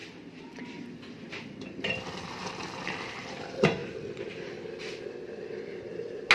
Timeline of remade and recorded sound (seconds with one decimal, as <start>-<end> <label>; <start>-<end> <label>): 0.0-6.3 recorded